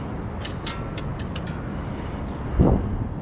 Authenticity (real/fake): real